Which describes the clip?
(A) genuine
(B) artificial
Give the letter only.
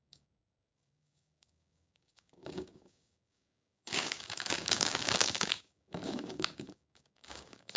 B